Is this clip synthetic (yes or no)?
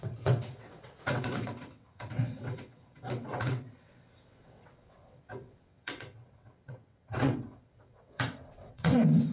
yes